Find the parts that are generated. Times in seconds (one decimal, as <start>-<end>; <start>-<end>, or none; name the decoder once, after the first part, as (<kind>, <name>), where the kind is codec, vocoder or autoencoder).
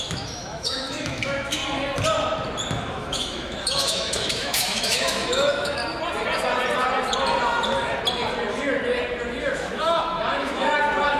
0.0-1.6 (autoencoder, DAC-VAE); 2.9-5.8; 9.5-11.2